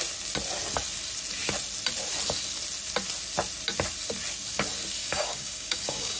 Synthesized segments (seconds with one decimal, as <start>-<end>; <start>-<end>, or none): 5.0-6.2